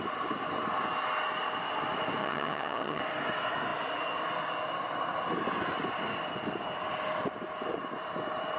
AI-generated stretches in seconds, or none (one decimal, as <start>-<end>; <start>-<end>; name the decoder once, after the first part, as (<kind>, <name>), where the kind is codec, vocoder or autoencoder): 2.2-3.0 (vocoder, HiFi-GAN)